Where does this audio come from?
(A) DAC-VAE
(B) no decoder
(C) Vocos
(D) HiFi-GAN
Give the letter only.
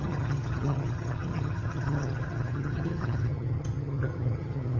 D